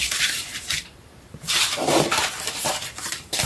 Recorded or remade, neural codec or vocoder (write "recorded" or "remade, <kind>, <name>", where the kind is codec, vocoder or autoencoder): remade, vocoder, BigVGAN v2